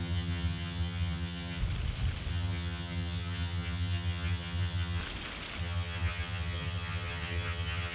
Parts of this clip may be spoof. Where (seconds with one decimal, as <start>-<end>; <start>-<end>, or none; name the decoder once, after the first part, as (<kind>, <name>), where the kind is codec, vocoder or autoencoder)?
0.0-1.6 (vocoder, HiFi-GAN); 2.3-5.0; 5.6-7.9